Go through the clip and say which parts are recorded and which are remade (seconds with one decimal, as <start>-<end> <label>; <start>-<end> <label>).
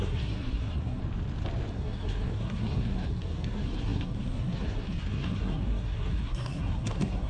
0.0-1.0 remade; 1.0-1.7 recorded; 1.7-7.3 remade